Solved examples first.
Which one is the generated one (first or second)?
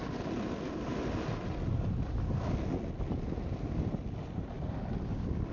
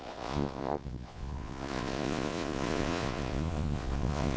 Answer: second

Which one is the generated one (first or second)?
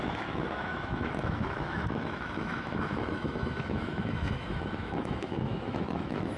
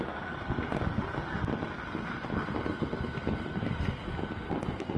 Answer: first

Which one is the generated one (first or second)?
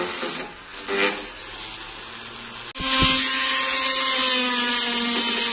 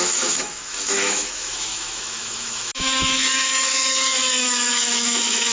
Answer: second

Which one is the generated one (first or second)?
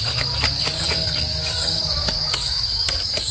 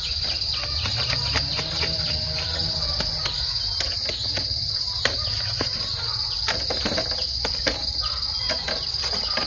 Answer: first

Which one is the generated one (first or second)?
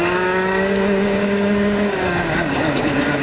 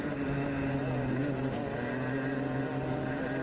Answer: first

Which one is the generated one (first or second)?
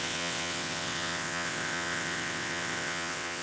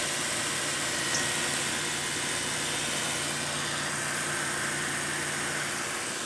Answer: first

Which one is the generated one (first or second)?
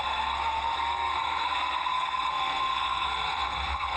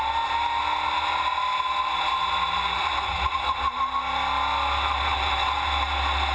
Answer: first